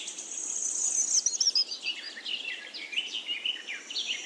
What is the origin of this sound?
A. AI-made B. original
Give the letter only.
B